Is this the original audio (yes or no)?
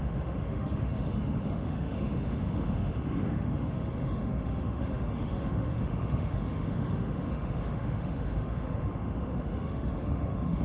no